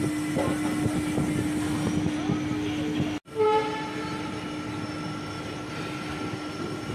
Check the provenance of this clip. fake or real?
real